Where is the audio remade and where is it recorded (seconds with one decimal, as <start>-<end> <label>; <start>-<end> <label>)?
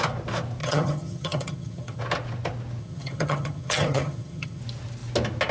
0.0-0.6 recorded; 0.6-2.0 remade; 2.0-2.8 recorded; 2.8-4.6 remade; 4.6-5.5 recorded